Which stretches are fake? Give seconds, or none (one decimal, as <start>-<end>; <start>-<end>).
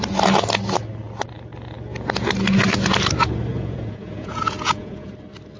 3.5-5.1